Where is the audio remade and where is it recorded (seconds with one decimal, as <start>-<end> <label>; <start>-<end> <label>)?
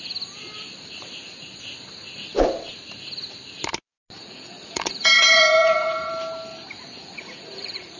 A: 0.0-4.2 recorded; 4.2-6.1 remade; 6.1-7.0 recorded; 7.0-8.0 remade